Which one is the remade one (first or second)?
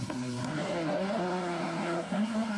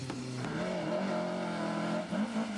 first